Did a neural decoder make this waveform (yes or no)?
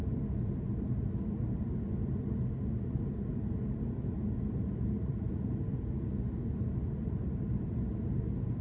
no